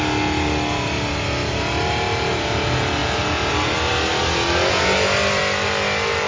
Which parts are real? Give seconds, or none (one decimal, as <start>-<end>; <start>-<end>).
0.0-6.3